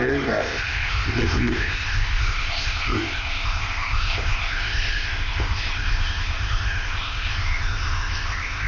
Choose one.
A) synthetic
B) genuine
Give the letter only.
A